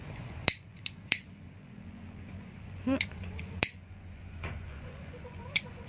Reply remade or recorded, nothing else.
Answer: remade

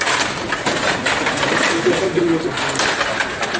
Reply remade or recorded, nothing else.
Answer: recorded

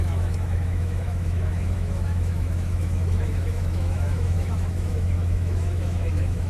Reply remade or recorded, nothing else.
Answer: remade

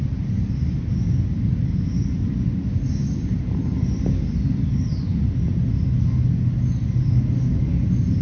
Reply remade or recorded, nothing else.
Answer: recorded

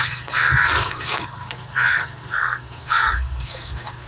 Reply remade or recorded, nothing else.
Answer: remade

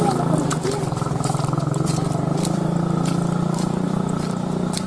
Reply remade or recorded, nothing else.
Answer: remade